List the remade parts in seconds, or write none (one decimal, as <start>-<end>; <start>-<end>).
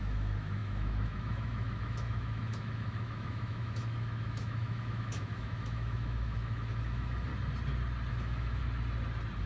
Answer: 0.0-7.3; 8.1-8.6